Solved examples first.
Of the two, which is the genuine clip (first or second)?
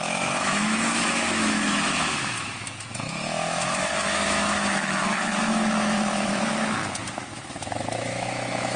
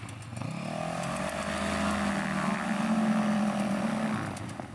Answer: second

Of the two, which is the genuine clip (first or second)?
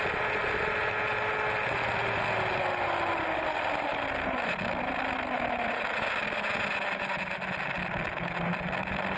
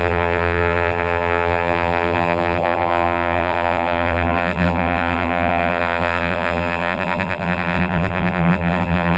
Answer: first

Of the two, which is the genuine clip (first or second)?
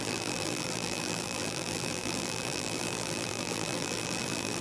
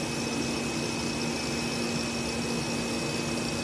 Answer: second